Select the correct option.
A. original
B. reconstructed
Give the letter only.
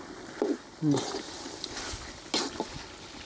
A